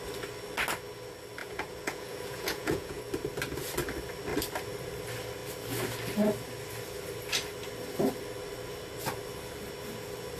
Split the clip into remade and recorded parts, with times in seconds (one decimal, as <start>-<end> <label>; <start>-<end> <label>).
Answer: 0.0-1.4 recorded; 1.4-3.0 remade; 3.0-10.4 recorded

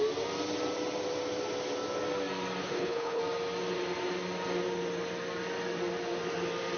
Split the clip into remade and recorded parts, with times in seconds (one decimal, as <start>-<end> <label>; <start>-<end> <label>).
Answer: 0.0-2.6 recorded; 2.6-3.2 remade; 3.2-6.8 recorded

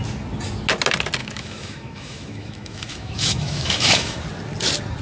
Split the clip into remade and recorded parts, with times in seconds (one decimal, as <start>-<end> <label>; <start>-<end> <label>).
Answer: 0.0-1.2 recorded; 1.2-4.2 remade; 4.2-5.0 recorded

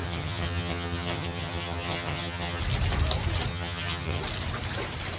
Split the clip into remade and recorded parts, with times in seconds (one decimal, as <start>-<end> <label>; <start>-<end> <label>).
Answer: 0.0-2.6 remade; 2.6-3.5 recorded; 3.5-4.2 remade; 4.2-5.2 recorded

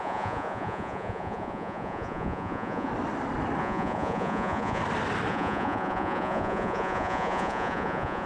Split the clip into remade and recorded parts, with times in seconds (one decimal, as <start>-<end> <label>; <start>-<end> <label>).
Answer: 0.0-2.9 remade; 2.9-3.6 recorded; 3.6-4.8 remade; 4.8-5.3 recorded; 5.3-8.3 remade

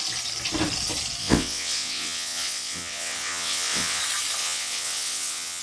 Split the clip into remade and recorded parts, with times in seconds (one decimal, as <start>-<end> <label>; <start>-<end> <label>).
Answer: 0.0-1.2 recorded; 1.2-4.0 remade; 4.0-4.4 recorded; 4.4-5.6 remade